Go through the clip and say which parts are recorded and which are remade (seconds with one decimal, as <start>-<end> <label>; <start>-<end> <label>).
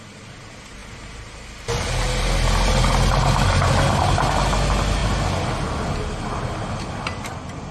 0.0-7.7 recorded